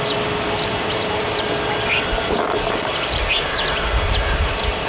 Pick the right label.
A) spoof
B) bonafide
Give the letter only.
B